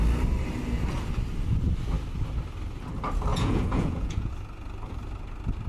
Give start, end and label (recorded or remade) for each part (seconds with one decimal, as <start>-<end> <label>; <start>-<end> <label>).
0.0-3.3 recorded; 3.3-4.3 remade; 4.3-5.7 recorded

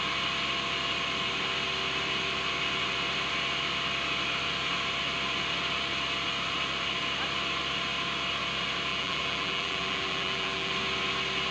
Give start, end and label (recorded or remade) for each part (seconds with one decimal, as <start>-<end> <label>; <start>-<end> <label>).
0.0-8.9 recorded; 8.9-10.7 remade; 10.7-11.5 recorded

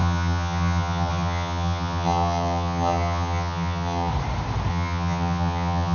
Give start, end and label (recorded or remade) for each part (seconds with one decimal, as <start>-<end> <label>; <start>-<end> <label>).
0.0-4.1 remade; 4.1-4.7 recorded; 4.7-5.9 remade

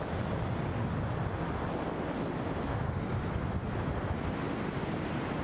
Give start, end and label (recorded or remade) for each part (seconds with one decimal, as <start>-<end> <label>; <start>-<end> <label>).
0.0-2.7 recorded; 2.7-3.3 remade; 3.3-5.4 recorded

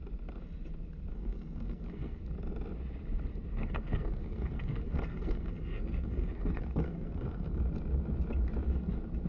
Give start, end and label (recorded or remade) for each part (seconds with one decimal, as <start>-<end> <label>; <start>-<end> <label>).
0.0-1.1 recorded; 1.1-2.2 remade; 2.2-3.5 recorded; 3.5-7.6 remade; 7.6-9.3 recorded